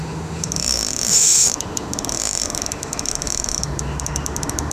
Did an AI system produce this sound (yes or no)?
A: yes